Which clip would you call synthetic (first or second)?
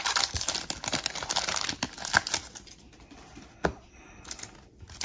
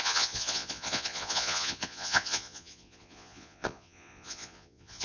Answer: second